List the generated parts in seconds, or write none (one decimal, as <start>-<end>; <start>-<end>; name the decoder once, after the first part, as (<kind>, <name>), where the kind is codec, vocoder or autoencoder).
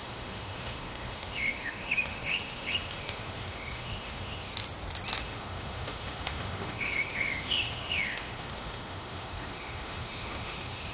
0.0-4.5 (autoencoder, DAC-VAE); 5.2-10.9